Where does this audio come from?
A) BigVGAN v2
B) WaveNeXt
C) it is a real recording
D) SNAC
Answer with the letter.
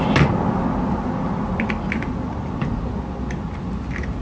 C